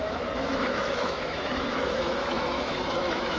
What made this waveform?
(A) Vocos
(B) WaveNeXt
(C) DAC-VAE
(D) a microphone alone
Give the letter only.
C